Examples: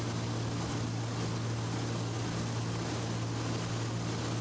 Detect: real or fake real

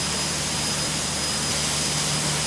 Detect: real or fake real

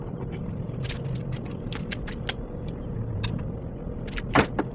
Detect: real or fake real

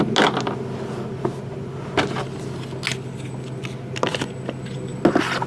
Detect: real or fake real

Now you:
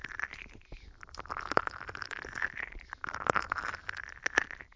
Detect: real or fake real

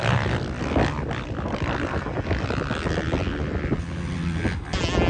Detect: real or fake real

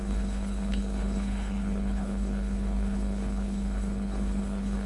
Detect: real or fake fake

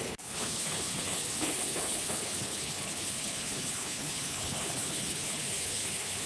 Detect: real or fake fake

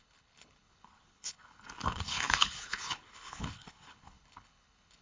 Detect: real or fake fake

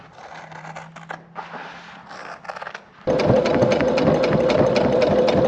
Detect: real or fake real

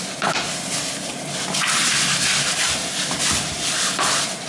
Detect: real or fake real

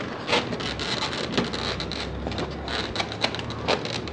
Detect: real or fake real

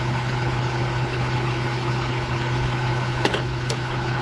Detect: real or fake fake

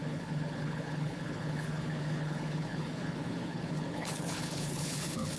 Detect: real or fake fake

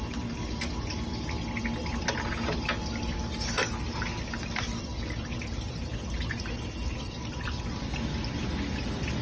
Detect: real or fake real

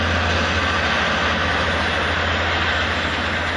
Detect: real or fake real